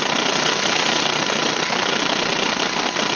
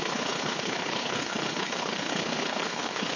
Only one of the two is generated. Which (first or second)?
second